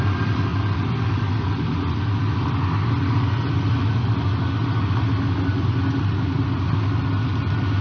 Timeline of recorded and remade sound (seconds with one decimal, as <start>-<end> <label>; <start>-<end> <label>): 0.0-7.8 recorded